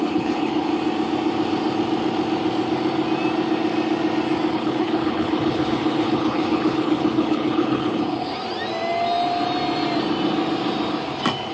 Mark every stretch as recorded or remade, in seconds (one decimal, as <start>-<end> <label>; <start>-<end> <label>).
0.0-0.7 remade; 0.7-4.5 recorded; 4.5-8.3 remade; 8.3-11.5 recorded